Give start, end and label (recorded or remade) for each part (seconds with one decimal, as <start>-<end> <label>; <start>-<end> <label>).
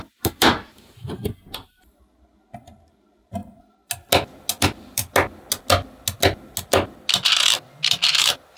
0.0-3.4 remade; 3.4-4.6 recorded; 4.6-5.0 remade; 5.0-8.2 recorded; 8.2-8.6 remade